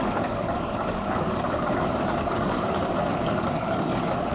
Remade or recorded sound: remade